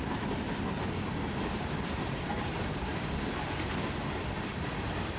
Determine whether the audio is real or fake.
real